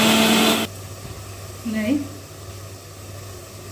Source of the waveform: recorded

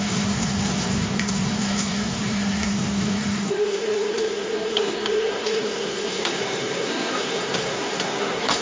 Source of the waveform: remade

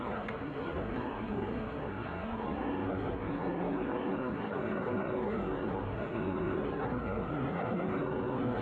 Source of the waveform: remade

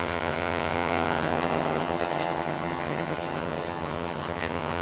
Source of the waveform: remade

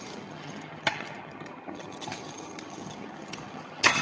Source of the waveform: remade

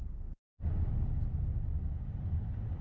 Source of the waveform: recorded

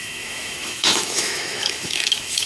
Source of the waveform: remade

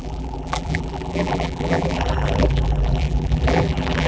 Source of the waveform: remade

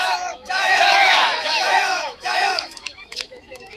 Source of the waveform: remade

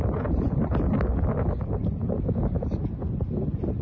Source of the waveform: recorded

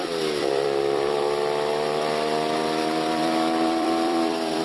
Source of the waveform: remade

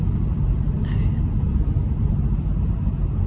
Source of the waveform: recorded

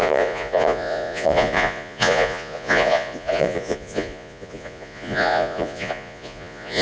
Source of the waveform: remade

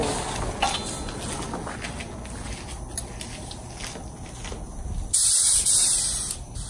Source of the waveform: recorded